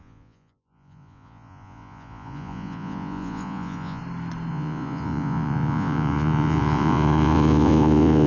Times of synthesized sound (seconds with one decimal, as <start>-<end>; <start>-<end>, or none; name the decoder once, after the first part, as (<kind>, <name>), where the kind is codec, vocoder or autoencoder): 0.0-4.0 (vocoder, Vocos); 4.5-8.3